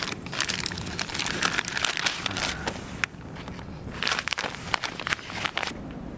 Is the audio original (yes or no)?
yes